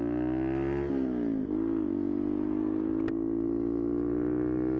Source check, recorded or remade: recorded